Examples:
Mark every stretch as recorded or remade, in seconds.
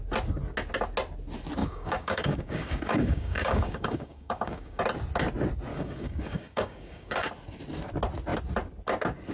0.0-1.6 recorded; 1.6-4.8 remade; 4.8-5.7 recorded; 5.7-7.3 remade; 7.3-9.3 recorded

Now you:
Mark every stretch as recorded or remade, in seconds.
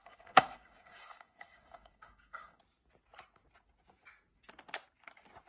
0.0-2.6 remade; 2.6-5.5 recorded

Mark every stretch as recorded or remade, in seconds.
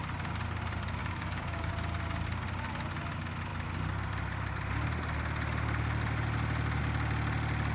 0.0-1.0 recorded; 1.0-1.7 remade; 1.7-7.7 recorded